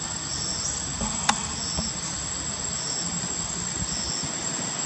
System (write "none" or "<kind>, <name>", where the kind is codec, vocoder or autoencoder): none